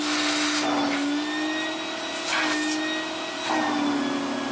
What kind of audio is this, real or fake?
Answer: real